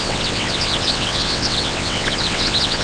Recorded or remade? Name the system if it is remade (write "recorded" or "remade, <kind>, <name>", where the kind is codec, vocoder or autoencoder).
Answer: remade, vocoder, WaveNeXt